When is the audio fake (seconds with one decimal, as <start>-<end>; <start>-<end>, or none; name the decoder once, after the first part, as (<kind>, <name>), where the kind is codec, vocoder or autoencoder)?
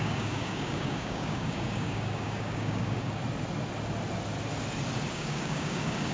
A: 0.0-3.2 (codec, DAC); 5.1-6.1